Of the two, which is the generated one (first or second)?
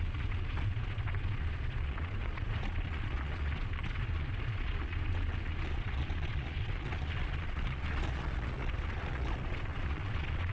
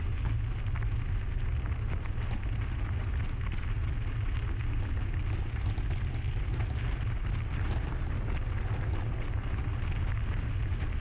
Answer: first